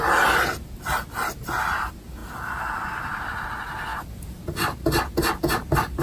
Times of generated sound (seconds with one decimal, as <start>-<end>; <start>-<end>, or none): none

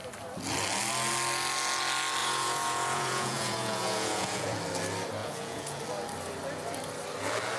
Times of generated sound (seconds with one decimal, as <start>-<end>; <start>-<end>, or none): 2.2-4.6; 5.2-5.8

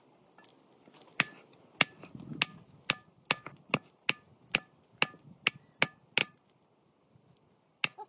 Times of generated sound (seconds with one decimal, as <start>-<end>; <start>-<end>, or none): none

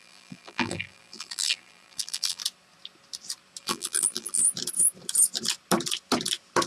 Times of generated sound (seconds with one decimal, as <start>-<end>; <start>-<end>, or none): 0.0-2.4; 3.6-4.4

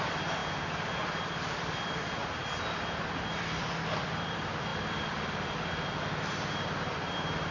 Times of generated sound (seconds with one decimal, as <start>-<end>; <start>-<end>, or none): 0.0-2.2; 3.2-7.5

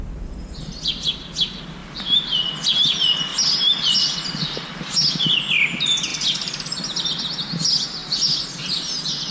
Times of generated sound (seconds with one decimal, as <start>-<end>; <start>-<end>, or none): 1.8-2.4; 6.1-7.0; 8.0-8.8